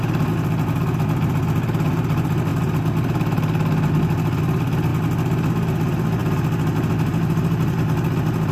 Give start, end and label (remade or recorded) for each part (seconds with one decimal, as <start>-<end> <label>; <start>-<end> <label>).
0.0-8.5 recorded